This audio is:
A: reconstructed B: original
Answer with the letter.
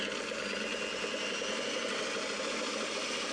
B